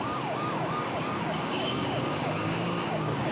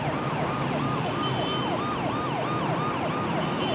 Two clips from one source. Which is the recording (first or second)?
second